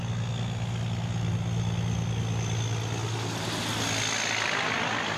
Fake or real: real